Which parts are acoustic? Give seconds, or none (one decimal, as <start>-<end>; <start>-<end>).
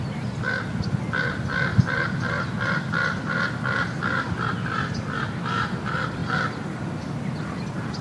0.0-8.0